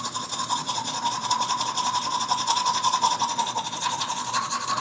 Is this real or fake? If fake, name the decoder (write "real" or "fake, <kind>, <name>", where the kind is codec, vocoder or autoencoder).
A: fake, vocoder, Vocos